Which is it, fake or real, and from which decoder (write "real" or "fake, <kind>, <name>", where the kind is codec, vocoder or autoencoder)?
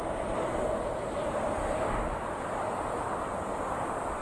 real